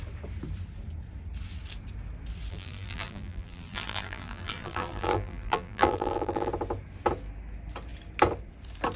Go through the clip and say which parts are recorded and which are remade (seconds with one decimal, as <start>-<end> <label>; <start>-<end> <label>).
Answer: 0.0-2.5 recorded; 2.5-6.5 remade; 6.5-9.0 recorded